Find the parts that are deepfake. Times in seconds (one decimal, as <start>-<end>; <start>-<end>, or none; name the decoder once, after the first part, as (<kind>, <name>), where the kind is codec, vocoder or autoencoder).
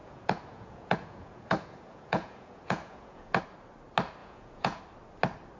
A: 0.0-3.4 (vocoder, Vocos); 4.2-4.8